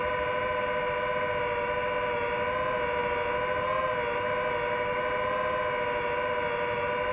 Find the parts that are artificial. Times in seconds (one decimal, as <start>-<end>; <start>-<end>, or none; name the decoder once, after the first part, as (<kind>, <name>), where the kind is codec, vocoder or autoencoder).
none